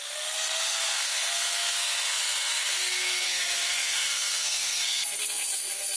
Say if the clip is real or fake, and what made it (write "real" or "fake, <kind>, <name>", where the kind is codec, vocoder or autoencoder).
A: fake, codec, SNAC